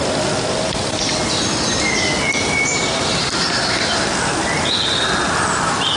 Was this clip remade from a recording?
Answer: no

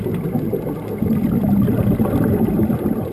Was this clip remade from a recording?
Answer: no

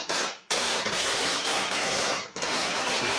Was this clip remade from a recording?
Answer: yes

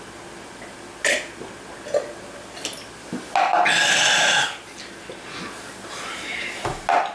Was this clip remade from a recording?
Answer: no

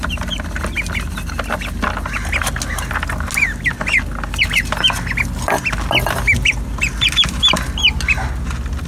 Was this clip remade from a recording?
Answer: no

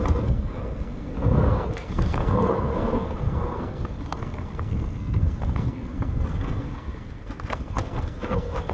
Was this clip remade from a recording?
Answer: yes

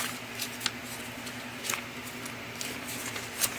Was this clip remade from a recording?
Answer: no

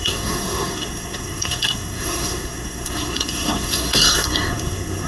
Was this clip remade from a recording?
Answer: yes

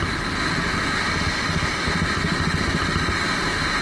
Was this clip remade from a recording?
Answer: no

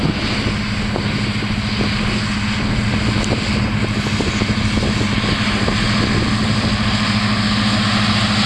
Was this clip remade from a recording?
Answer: no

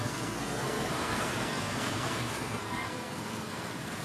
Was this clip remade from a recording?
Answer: yes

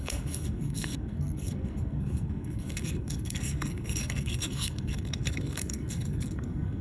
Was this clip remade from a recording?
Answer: yes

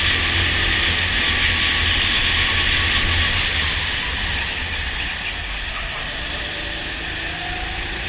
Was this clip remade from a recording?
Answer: no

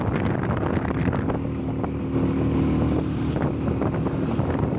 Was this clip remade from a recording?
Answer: no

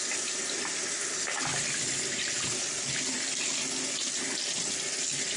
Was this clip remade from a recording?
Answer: no